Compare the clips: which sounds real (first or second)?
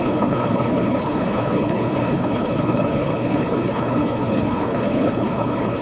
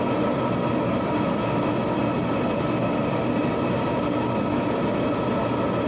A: second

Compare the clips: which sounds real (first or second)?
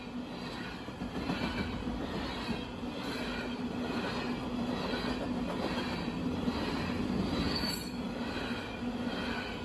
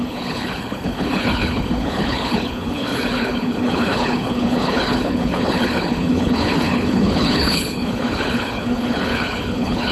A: first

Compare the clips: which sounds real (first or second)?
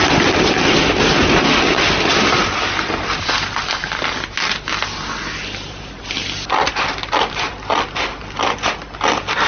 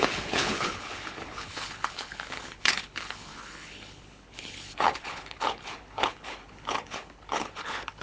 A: first